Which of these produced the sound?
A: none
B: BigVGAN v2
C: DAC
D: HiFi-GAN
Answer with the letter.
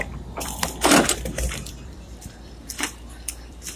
B